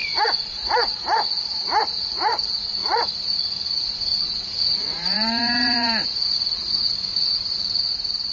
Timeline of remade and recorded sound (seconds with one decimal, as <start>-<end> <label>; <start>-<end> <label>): 0.0-6.6 remade; 6.6-8.3 recorded